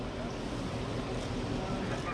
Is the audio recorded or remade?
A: recorded